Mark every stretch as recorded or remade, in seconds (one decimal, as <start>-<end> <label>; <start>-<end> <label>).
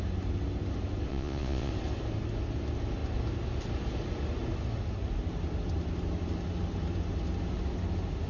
0.0-1.1 recorded; 1.1-1.7 remade; 1.7-8.3 recorded